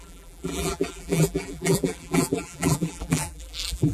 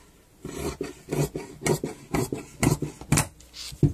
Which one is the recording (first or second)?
second